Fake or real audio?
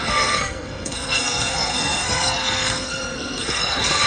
fake